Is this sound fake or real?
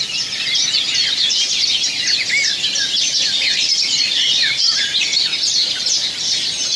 fake